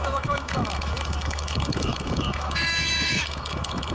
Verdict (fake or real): fake